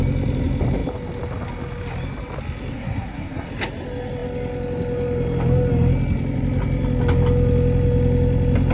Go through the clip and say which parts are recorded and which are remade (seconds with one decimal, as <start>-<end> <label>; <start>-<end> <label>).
0.0-2.7 recorded; 2.7-3.5 remade; 3.5-8.7 recorded